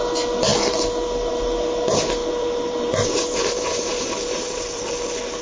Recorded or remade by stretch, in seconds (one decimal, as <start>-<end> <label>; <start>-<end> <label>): 0.0-2.2 recorded; 2.2-4.9 remade; 4.9-5.4 recorded